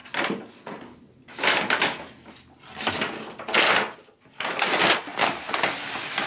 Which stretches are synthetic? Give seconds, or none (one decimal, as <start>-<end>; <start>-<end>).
none